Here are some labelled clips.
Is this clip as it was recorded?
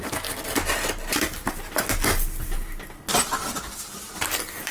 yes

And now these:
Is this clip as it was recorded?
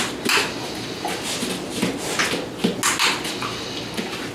yes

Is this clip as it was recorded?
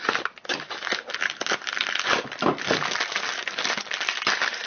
yes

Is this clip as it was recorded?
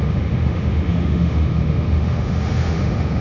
no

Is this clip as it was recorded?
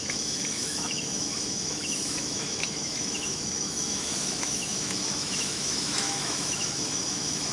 no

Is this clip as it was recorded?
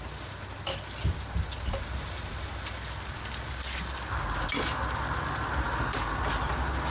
yes